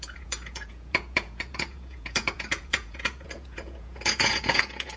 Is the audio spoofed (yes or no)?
yes